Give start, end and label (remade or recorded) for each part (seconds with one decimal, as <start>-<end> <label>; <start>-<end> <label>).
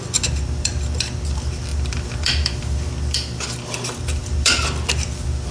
0.0-5.5 remade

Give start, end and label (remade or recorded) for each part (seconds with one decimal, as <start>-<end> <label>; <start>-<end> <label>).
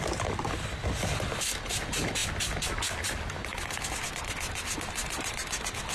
0.0-5.9 recorded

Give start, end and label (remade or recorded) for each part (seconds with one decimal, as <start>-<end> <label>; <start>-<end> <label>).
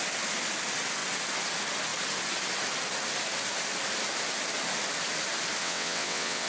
0.0-5.6 recorded; 5.6-6.5 remade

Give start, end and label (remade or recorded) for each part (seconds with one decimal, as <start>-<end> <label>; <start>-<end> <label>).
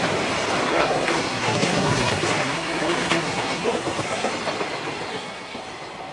0.0-0.6 recorded; 0.6-4.3 remade; 4.3-5.1 recorded; 5.1-5.6 remade; 5.6-6.1 recorded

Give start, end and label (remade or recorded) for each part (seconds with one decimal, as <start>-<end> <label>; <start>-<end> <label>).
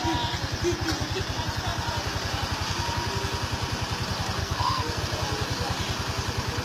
0.0-4.4 recorded; 4.4-5.0 remade; 5.0-6.6 recorded